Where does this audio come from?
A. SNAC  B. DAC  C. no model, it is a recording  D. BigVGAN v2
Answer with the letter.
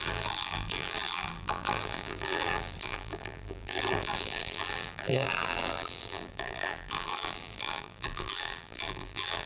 D